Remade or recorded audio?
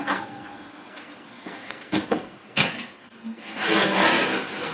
remade